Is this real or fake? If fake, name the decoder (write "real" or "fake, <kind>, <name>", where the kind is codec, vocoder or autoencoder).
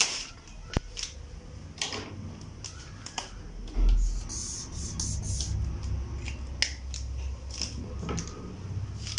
real